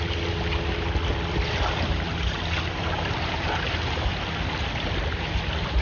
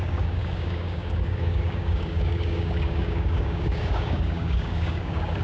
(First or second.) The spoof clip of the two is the second